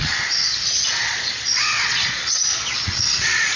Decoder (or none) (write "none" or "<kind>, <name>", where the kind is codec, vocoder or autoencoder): vocoder, Vocos